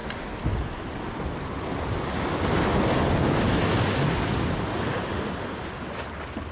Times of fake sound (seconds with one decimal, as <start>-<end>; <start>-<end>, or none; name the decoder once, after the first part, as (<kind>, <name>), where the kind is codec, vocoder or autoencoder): none